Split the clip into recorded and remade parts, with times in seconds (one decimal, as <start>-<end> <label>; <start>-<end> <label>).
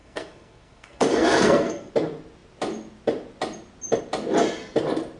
0.0-1.9 remade; 1.9-5.2 recorded